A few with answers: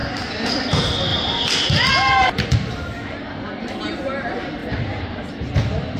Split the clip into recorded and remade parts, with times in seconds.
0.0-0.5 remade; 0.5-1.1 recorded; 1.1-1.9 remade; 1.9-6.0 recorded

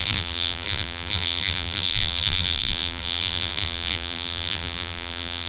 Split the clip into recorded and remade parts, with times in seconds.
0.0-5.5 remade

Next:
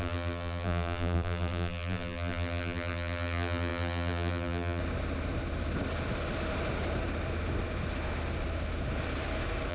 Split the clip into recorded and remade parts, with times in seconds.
0.0-4.8 remade; 4.8-9.7 recorded

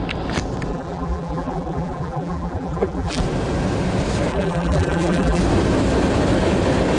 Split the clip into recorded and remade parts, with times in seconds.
0.0-0.7 recorded; 0.7-3.2 remade; 3.2-4.3 recorded; 4.3-5.4 remade; 5.4-7.0 recorded